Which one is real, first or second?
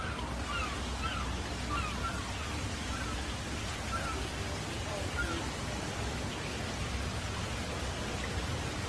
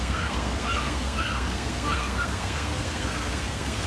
first